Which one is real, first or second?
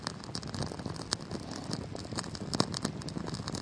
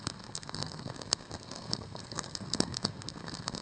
first